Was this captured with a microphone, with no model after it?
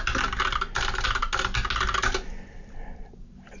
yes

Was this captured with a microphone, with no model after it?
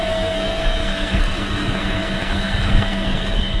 no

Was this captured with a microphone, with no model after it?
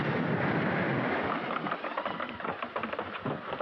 yes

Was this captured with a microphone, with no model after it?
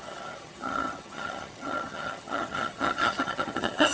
no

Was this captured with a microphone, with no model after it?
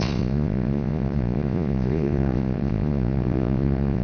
no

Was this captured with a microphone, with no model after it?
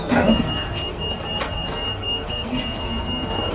no